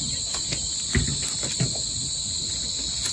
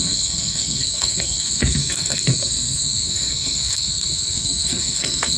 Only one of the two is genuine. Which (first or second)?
first